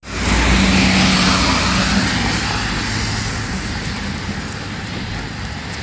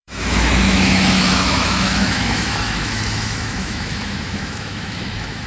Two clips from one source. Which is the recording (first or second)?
first